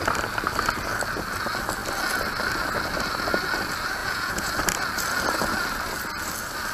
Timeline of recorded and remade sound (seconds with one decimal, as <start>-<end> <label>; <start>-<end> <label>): 0.0-4.0 recorded; 4.0-4.5 remade; 4.5-6.7 recorded